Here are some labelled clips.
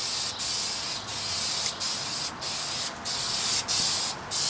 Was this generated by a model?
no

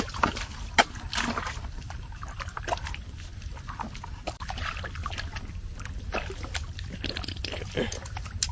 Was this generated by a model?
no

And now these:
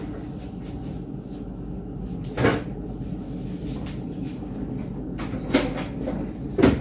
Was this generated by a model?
no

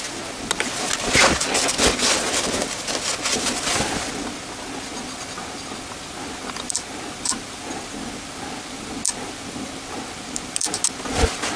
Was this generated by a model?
no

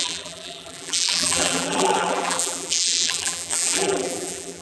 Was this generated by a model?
yes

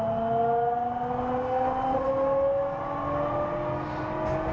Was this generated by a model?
no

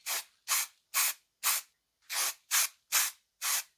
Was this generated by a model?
no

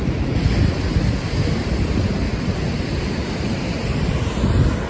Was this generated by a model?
no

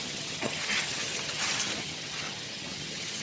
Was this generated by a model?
yes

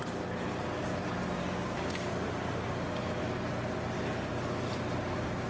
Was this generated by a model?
no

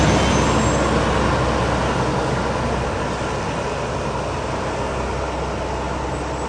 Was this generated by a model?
no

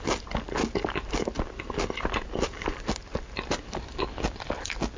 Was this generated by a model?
no